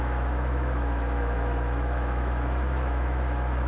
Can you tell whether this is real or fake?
fake